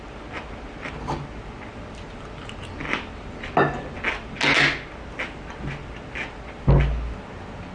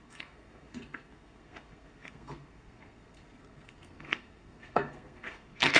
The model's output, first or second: second